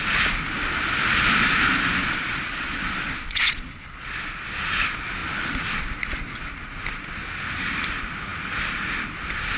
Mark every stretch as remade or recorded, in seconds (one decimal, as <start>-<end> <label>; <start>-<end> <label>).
0.0-2.0 recorded; 2.0-4.5 remade; 4.5-9.6 recorded